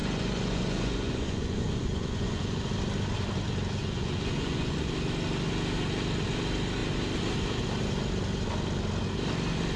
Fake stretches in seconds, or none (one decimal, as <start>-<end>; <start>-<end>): 0.0-2.7; 3.8-4.9